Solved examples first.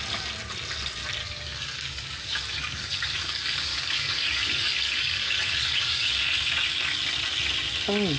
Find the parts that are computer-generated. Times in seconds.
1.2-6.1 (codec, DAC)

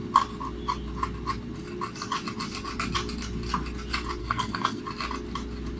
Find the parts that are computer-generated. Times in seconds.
4.2-4.8 (codec, SNAC)

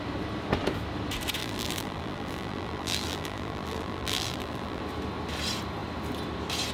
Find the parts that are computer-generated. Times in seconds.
1.4-4.8 (vocoder, BigVGAN v2)